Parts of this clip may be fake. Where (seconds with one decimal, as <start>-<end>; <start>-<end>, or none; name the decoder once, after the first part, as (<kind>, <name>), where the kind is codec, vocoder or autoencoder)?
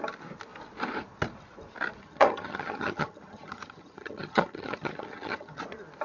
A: 2.0-5.6 (vocoder, HiFi-GAN)